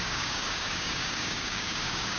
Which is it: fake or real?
fake